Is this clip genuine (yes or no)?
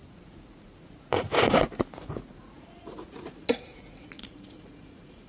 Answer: no